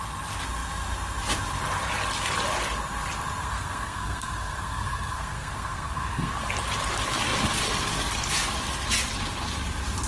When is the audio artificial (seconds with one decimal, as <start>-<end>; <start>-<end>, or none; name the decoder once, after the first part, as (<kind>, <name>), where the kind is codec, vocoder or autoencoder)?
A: 3.4-6.4 (codec, SNAC)